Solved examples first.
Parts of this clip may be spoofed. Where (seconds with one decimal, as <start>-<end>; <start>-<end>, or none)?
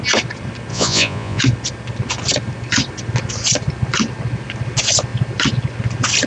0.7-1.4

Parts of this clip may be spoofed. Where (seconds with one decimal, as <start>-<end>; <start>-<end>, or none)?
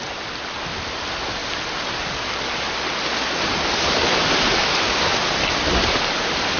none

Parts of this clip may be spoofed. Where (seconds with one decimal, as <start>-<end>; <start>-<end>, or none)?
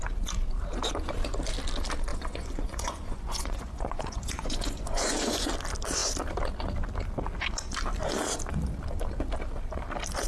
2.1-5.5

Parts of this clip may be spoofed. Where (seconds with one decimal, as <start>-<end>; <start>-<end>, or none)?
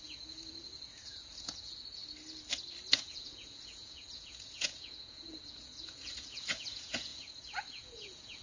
0.0-2.0; 2.9-8.4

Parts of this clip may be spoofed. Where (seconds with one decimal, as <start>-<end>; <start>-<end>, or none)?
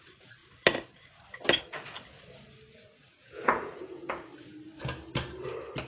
3.2-4.0